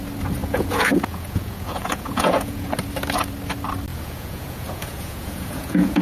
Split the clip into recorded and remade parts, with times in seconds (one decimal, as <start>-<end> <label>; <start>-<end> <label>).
0.0-0.4 recorded; 0.4-2.7 remade; 2.7-3.9 recorded; 3.9-6.0 remade